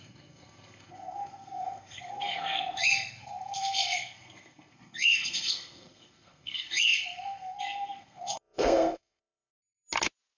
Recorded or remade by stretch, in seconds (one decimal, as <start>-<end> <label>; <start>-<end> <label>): 0.0-9.5 remade; 9.5-10.4 recorded